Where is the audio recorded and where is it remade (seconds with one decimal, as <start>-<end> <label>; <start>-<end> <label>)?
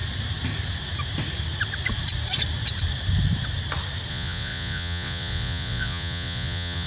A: 0.0-4.1 recorded; 4.1-6.9 remade